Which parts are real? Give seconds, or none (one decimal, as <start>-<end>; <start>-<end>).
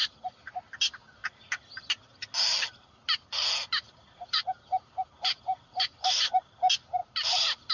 0.0-7.7